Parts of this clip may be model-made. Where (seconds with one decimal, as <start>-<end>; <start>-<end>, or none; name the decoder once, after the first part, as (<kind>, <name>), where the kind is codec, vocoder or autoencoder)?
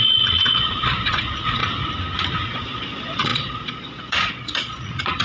0.0-1.6 (vocoder, Vocos); 2.3-5.2